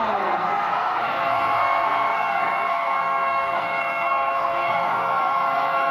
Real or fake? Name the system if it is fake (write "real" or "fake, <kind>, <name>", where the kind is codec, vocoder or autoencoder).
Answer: fake, codec, SNAC